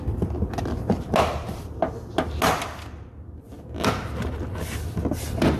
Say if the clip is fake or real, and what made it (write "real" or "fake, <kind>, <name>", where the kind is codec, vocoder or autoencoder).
real